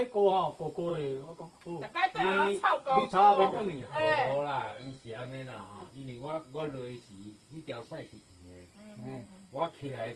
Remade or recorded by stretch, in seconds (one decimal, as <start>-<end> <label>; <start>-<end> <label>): 0.0-0.9 recorded; 0.9-1.5 remade; 1.5-2.0 recorded; 2.0-4.0 remade; 4.0-4.7 recorded; 4.7-8.4 remade; 8.4-9.0 recorded; 9.0-10.2 remade